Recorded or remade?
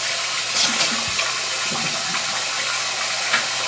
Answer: recorded